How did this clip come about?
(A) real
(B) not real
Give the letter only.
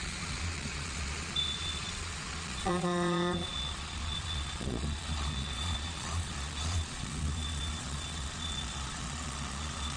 B